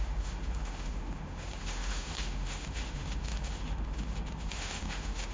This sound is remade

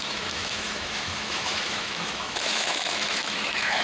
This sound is remade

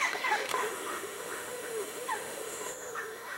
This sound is remade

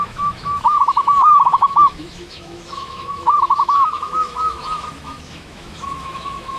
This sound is remade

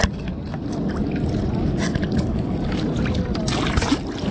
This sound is recorded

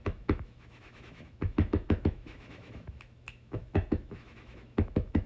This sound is remade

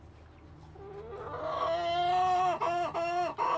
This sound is recorded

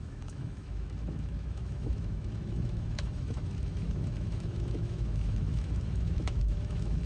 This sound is remade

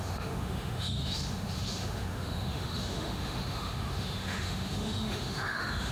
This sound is remade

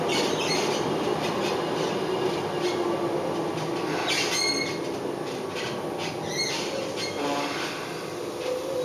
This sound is recorded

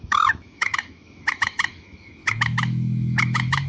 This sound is remade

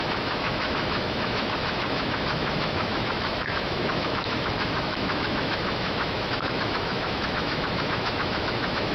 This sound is remade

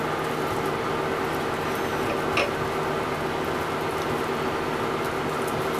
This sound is recorded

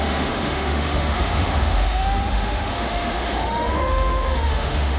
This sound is remade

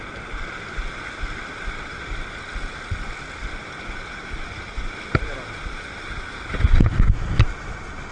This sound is recorded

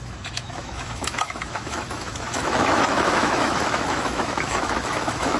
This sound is remade